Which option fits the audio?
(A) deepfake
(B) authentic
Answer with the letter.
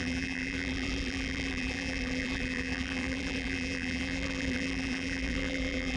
A